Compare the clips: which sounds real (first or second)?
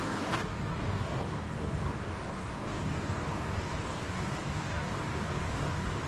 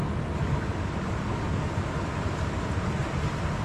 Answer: second